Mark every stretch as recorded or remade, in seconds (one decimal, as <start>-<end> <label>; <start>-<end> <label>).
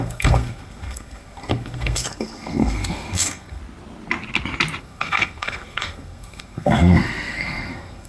0.0-3.6 remade; 3.6-4.8 recorded; 4.8-8.1 remade